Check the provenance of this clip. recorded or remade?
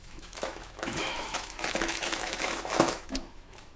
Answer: remade